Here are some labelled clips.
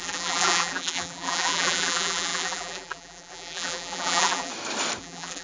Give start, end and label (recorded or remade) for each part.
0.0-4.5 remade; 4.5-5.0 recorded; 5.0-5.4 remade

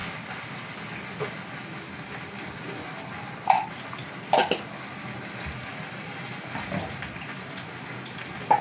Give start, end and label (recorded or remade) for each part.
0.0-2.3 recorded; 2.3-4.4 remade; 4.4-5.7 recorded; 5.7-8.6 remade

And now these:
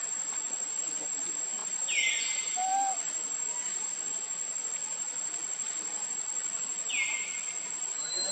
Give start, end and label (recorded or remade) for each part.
0.0-8.3 recorded

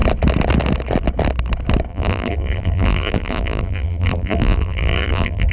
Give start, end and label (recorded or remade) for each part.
0.0-1.9 recorded; 1.9-5.5 remade

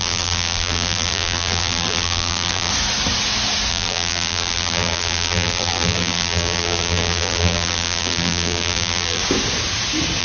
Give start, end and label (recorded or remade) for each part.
0.0-2.7 remade; 2.7-3.7 recorded; 3.7-9.2 remade; 9.2-10.2 recorded

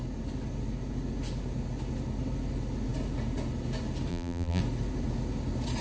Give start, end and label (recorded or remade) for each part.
0.0-4.1 recorded; 4.1-4.6 remade; 4.6-5.8 recorded